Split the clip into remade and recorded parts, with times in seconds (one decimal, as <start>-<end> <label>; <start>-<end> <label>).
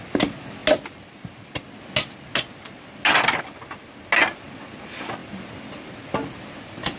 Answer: 0.0-7.0 recorded